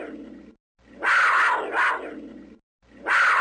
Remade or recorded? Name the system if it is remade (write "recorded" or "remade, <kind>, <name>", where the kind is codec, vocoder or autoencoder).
recorded